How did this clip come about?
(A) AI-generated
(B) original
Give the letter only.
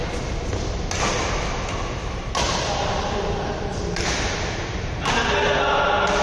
B